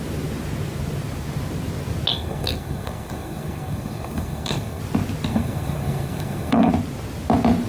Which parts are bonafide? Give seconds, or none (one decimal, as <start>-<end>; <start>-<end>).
0.0-2.1; 4.8-5.3; 6.7-7.7